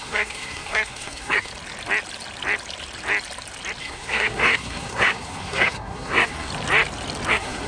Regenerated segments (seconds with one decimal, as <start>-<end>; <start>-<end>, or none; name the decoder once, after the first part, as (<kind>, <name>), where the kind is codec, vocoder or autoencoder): 0.0-1.5 (codec, SNAC); 3.8-6.5; 7.3-7.7